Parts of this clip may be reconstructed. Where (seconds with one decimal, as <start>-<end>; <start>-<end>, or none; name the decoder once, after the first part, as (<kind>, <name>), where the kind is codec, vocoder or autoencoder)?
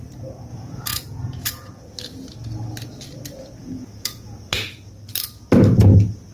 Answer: 0.5-1.7 (vocoder, Vocos); 3.6-4.9